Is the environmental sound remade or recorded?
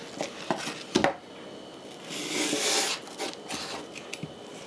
recorded